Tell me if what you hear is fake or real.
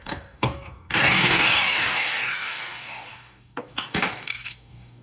fake